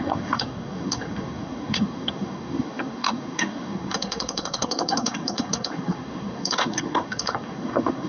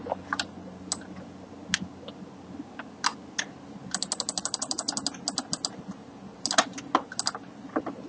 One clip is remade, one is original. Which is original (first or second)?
second